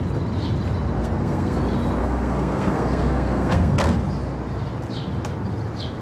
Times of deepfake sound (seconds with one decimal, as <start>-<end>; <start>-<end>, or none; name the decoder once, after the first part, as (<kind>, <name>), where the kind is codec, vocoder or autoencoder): 1.0-1.6 (codec, SNAC); 2.0-4.0